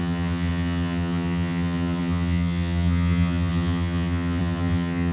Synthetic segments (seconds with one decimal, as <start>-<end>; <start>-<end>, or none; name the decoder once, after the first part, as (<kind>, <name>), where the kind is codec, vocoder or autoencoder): 0.0-5.1 (vocoder, HiFi-GAN)